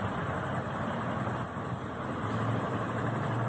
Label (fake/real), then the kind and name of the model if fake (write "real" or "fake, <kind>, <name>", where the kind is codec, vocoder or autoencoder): real